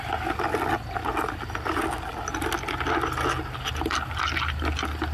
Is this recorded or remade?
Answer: recorded